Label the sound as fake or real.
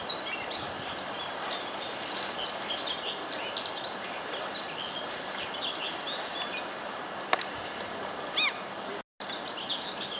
real